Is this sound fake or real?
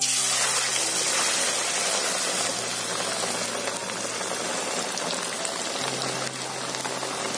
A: real